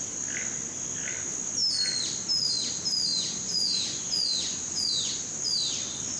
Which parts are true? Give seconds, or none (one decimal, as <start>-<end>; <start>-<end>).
0.0-3.1; 5.2-6.2